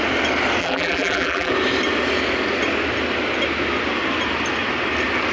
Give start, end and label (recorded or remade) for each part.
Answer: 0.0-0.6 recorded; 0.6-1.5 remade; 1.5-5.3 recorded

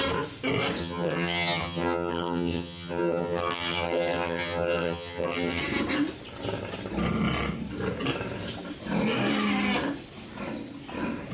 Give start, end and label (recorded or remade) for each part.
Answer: 0.0-0.8 recorded; 0.8-5.6 remade; 5.6-11.3 recorded

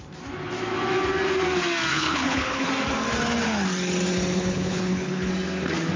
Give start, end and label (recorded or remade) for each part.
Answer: 0.0-1.9 recorded; 1.9-2.7 remade; 2.7-4.3 recorded; 4.3-5.3 remade; 5.3-6.0 recorded

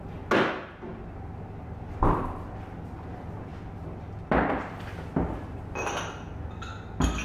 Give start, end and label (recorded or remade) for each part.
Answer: 0.0-7.2 recorded

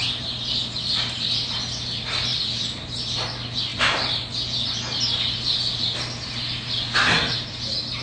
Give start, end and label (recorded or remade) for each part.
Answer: 0.0-2.3 recorded; 2.3-3.3 remade; 3.3-8.0 recorded